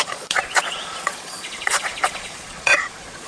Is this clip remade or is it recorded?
remade